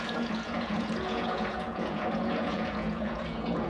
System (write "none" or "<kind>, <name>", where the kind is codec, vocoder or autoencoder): vocoder, Vocos